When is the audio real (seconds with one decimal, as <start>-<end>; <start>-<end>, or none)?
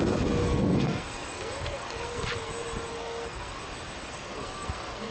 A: 0.0-0.4; 2.5-2.9; 3.6-4.0